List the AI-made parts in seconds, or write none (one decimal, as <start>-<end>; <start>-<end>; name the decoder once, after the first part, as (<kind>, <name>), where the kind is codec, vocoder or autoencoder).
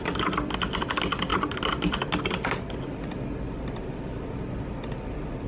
none